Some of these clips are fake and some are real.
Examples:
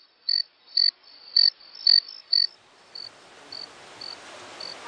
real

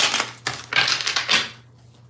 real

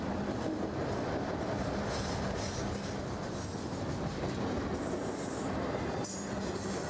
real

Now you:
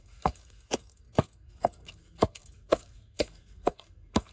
fake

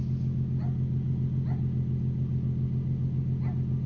real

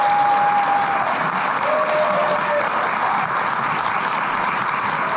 real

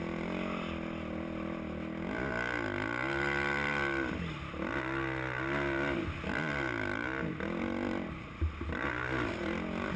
real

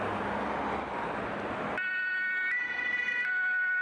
real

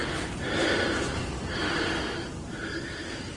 real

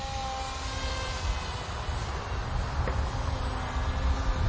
real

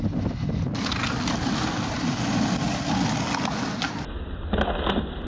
real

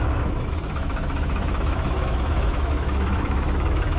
fake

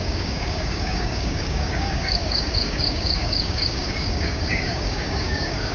fake